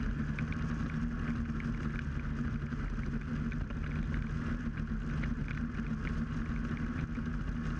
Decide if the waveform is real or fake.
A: real